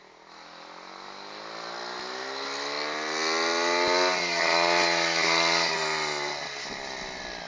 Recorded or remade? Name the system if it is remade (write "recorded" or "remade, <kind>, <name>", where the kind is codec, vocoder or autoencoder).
recorded